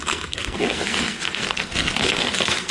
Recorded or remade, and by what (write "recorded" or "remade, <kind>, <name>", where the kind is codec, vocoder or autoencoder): remade, codec, SNAC